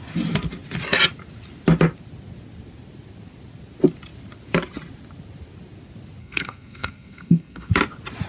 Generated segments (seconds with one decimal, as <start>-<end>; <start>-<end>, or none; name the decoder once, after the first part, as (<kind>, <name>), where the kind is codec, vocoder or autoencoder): 6.2-7.7 (codec, SNAC)